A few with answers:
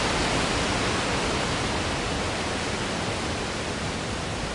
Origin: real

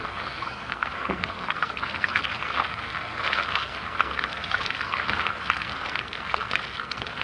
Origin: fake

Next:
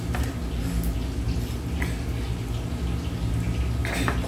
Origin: real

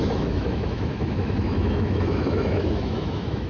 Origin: fake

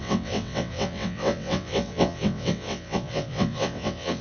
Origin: fake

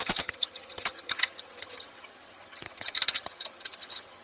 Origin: fake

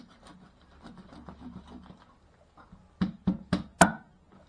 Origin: real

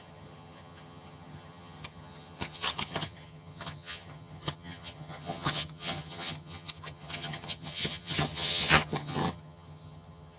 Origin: fake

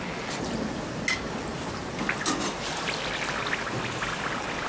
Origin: real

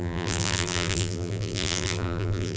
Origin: fake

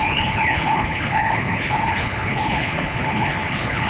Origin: fake